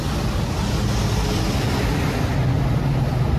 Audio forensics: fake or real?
real